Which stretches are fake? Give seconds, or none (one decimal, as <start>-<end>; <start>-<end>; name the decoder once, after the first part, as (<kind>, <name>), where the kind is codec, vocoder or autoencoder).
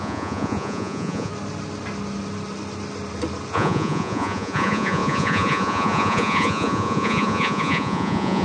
0.0-1.3 (vocoder, Vocos); 3.5-8.4